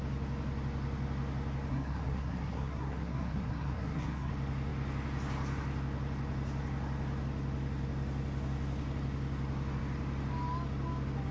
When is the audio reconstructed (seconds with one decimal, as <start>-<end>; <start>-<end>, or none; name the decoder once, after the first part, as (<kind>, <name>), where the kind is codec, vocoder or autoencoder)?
1.7-4.3 (codec, SNAC)